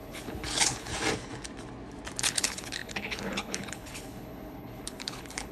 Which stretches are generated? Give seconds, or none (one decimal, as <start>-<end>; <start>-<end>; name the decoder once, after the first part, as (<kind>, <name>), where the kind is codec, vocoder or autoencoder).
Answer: 0.0-0.9 (codec, HILCodec); 2.2-5.5